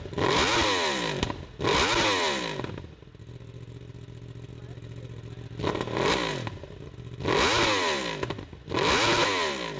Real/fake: real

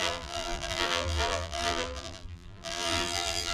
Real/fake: fake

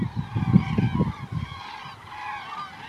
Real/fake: real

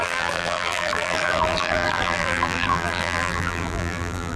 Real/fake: fake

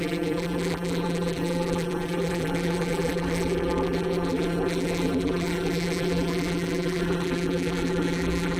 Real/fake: fake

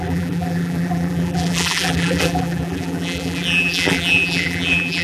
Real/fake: fake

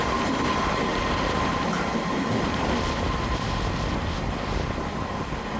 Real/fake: real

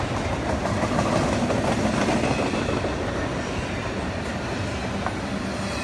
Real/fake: real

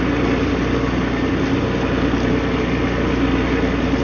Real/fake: real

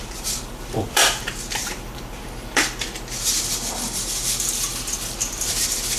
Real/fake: fake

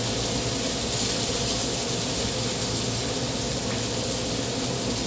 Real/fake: real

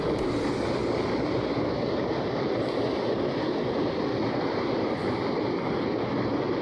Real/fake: real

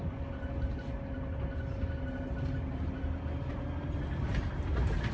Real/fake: real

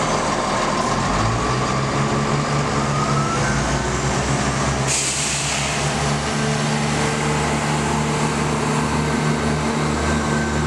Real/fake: real